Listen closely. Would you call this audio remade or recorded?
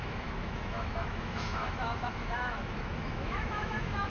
remade